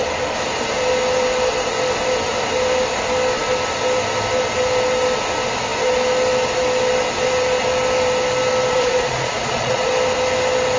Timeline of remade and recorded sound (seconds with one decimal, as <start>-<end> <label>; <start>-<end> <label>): 0.0-8.7 recorded; 8.7-9.9 remade; 9.9-10.8 recorded